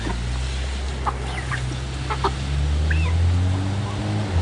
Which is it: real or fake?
real